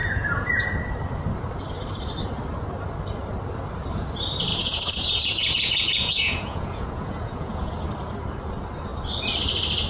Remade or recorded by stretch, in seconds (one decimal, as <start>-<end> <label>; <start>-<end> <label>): 0.0-0.5 remade; 0.5-4.5 recorded; 4.5-7.7 remade; 7.7-9.9 recorded